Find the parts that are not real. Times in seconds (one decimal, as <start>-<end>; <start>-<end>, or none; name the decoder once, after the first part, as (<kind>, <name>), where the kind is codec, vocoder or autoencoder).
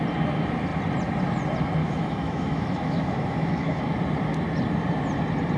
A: 1.8-3.8 (autoencoder, DAC-VAE)